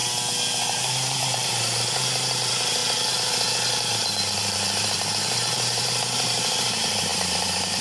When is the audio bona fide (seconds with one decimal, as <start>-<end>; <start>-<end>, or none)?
0.0-0.6; 2.8-3.7